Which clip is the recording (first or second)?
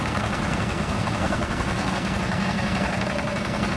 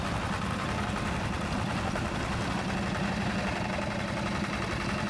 second